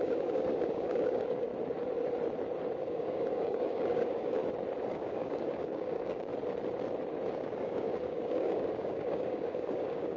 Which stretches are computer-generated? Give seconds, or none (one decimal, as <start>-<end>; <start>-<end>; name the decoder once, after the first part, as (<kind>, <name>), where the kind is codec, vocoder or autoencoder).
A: 0.0-1.5 (codec, DAC); 2.8-4.4; 4.9-6.3; 7.3-10.2